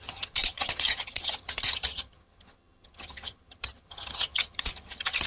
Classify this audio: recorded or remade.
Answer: remade